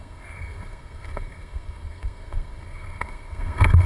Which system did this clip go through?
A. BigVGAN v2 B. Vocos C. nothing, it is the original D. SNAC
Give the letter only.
D